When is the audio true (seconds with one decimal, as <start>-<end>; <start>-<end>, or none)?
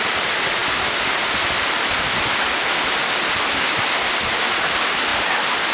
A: 0.0-5.7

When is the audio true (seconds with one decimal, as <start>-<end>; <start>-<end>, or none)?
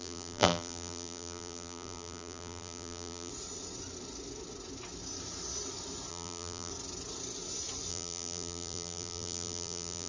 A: 3.3-6.1; 6.7-7.9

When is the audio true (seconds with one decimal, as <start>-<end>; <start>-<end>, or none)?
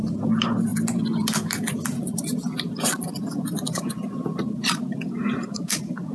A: 0.0-0.7; 4.4-6.1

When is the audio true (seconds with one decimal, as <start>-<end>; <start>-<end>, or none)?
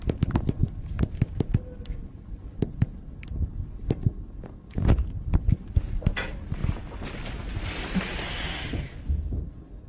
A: 0.0-9.9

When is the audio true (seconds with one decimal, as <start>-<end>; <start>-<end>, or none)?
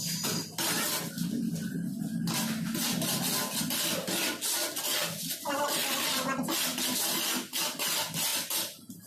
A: 0.0-5.0; 6.2-8.3